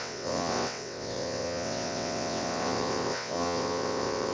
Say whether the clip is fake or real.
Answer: fake